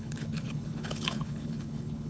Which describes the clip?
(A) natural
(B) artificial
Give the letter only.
B